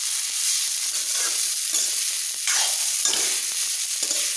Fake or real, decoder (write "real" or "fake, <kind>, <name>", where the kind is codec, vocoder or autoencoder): real